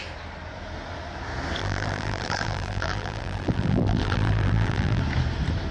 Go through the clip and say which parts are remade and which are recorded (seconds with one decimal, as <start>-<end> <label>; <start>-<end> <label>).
0.0-1.6 recorded; 1.6-5.0 remade; 5.0-5.7 recorded